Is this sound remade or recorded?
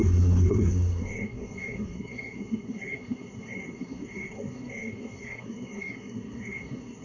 remade